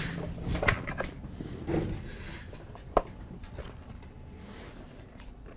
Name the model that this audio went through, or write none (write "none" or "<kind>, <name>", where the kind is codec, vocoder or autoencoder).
none